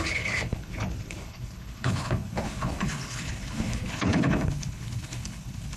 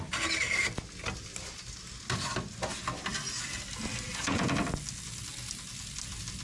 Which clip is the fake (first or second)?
first